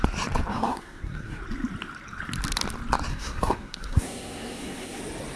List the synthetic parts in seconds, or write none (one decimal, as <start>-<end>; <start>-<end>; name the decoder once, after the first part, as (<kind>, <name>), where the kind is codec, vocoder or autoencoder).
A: 0.5-1.4 (codec, SNAC); 3.1-5.0